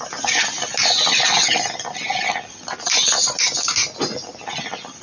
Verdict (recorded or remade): recorded